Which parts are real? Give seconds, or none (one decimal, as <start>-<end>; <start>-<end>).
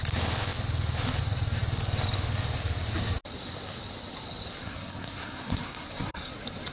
0.0-4.6; 6.3-6.7